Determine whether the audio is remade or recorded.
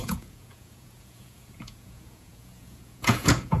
remade